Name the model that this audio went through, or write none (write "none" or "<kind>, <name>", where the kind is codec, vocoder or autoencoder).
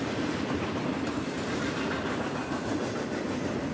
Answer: none